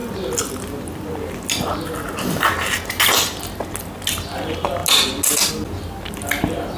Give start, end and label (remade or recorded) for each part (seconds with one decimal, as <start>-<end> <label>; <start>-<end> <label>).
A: 0.0-6.8 recorded